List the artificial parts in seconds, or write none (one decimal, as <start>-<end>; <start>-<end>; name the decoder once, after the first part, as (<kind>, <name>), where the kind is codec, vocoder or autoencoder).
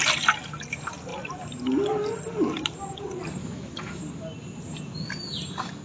3.4-4.0 (autoencoder, DAC-VAE)